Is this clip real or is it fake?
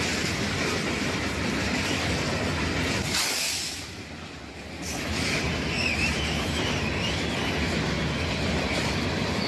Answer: real